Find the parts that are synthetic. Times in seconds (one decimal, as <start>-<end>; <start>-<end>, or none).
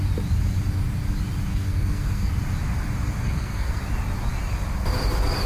1.5-2.3; 3.2-3.8